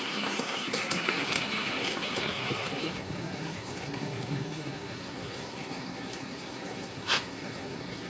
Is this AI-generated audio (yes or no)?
yes